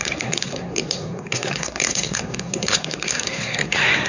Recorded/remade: remade